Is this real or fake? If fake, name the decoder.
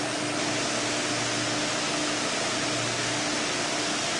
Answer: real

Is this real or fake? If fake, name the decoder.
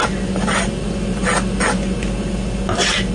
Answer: real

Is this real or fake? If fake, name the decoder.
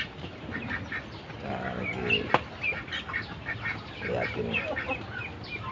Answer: real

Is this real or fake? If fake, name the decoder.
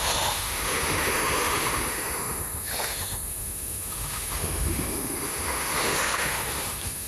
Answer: fake, autoencoder, DAC-VAE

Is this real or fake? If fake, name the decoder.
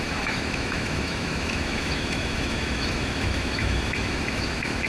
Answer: fake, autoencoder, DAC-VAE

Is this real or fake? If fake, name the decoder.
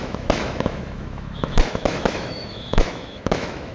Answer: fake, autoencoder, DAC-VAE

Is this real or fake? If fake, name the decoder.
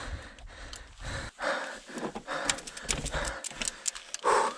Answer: real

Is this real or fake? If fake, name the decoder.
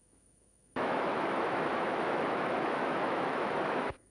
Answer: fake, autoencoder, DAC-VAE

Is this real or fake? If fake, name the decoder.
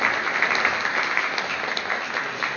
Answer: real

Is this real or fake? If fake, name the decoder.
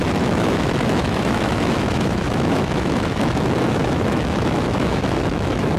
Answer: fake, autoencoder, DAC-VAE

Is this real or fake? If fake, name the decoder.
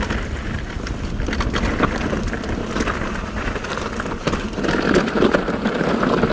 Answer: real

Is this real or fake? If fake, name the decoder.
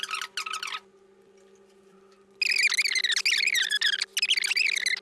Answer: real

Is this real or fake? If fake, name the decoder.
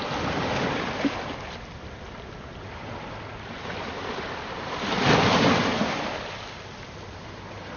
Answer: real